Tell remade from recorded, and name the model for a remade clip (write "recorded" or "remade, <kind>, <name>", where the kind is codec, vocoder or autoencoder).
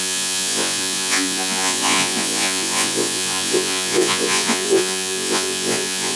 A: remade, vocoder, Vocos